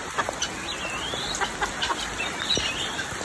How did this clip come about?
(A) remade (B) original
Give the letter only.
B